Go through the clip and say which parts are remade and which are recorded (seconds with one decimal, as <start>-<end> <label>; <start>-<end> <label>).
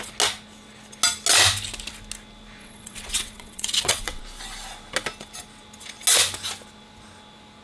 0.0-2.6 recorded; 2.6-4.2 remade; 4.2-7.6 recorded